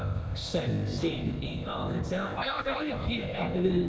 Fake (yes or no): yes